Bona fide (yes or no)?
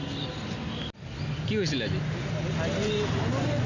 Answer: yes